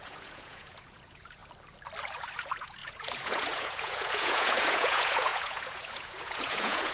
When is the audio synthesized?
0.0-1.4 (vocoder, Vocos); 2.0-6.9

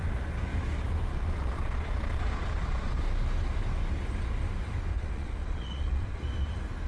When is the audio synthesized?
1.1-3.0 (vocoder, Vocos); 4.9-6.2

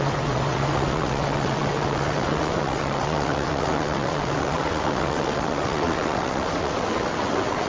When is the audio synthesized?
0.0-7.7 (vocoder, WaveNeXt)

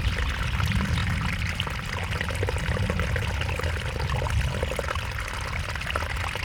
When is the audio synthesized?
none

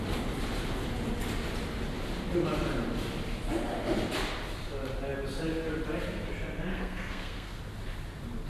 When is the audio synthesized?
6.7-7.6 (codec, SNAC)